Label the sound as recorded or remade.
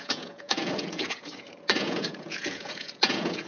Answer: remade